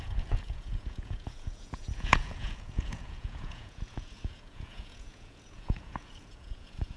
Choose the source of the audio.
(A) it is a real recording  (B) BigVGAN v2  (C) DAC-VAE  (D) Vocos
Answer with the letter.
D